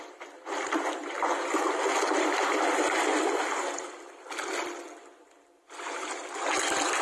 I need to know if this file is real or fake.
real